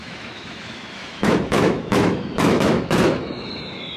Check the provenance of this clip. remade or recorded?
remade